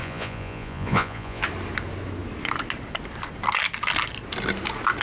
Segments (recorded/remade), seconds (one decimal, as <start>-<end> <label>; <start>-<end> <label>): 0.0-1.4 remade; 1.4-5.0 recorded

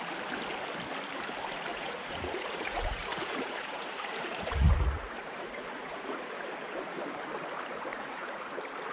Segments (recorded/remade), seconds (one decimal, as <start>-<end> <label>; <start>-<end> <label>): 0.0-1.7 recorded; 1.7-6.3 remade; 6.3-7.9 recorded; 7.9-8.5 remade; 8.5-8.9 recorded

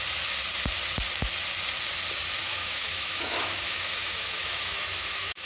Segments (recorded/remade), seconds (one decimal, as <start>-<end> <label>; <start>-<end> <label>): 0.0-2.4 recorded; 2.4-5.5 remade

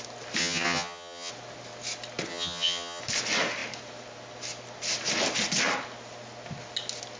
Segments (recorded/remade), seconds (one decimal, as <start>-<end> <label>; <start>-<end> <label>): 0.0-0.4 recorded; 0.4-1.3 remade; 1.3-2.3 recorded; 2.3-3.0 remade; 3.0-7.2 recorded

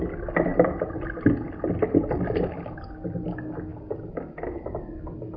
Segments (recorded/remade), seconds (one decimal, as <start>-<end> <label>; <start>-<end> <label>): 0.0-5.4 recorded

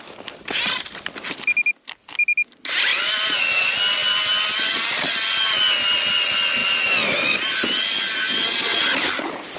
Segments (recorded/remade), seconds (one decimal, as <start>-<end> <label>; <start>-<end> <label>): 0.0-9.6 recorded

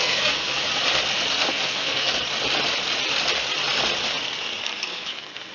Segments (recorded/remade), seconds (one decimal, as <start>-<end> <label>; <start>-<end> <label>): 0.0-0.7 remade; 0.7-1.5 recorded; 1.5-2.2 remade; 2.2-4.6 recorded; 4.6-5.5 remade